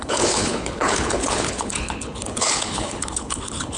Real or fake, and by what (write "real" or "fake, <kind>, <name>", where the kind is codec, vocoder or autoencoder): fake, codec, HILCodec